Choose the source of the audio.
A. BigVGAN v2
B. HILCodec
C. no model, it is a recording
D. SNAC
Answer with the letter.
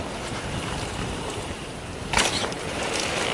C